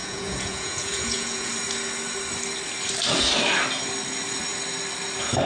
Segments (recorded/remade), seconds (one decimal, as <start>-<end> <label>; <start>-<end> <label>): 0.0-1.5 remade; 1.5-5.5 recorded